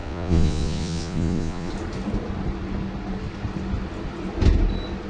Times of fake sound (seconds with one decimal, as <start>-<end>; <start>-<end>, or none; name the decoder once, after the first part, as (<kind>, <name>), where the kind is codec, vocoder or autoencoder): 0.0-1.7 (vocoder, Vocos)